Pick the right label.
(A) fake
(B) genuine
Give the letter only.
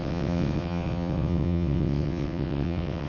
A